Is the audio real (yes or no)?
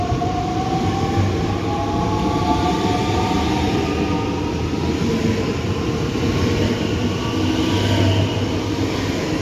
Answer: yes